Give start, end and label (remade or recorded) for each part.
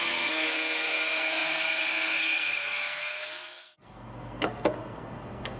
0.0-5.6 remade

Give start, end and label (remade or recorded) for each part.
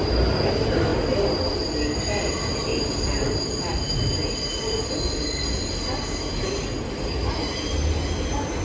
0.0-8.6 recorded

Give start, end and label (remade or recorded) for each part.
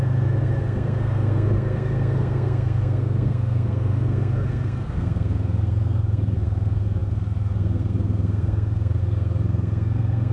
0.0-10.3 remade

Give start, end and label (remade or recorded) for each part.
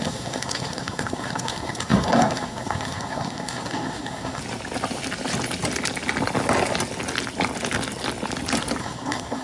0.0-4.4 remade; 4.4-8.8 recorded; 8.8-9.4 remade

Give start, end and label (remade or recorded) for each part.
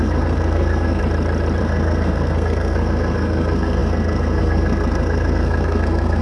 0.0-1.0 remade; 1.0-1.6 recorded; 1.6-6.2 remade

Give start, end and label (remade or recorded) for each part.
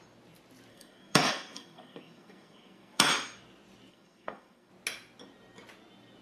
0.0-0.7 recorded; 0.7-3.1 remade; 3.1-3.9 recorded; 3.9-4.7 remade; 4.7-6.2 recorded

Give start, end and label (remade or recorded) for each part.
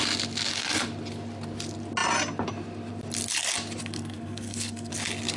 0.0-3.8 recorded; 3.8-4.9 remade; 4.9-5.4 recorded